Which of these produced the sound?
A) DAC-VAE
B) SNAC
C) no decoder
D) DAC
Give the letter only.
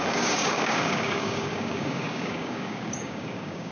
D